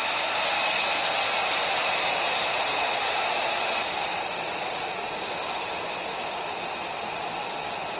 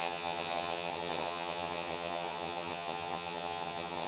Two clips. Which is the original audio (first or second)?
first